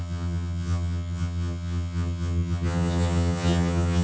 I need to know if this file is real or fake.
fake